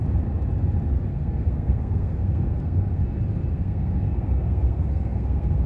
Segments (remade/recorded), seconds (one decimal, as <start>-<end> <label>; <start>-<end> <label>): 0.0-1.1 recorded; 1.1-3.0 remade; 3.0-3.5 recorded; 3.5-5.7 remade